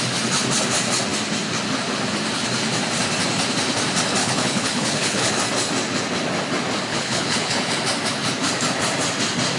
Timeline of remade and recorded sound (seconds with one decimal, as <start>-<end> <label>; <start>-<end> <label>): 0.0-4.2 recorded; 4.2-5.3 remade; 5.3-6.9 recorded; 6.9-7.8 remade; 7.8-9.6 recorded